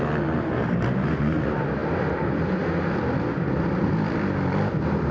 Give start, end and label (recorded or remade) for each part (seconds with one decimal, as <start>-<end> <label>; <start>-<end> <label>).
0.0-5.1 recorded